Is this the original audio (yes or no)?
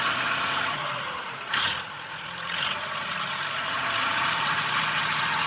no